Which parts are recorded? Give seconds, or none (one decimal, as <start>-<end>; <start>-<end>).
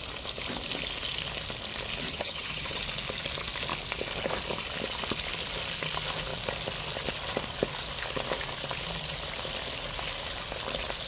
0.0-2.1; 2.8-11.1